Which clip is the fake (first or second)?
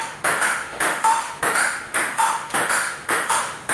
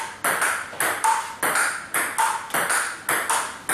first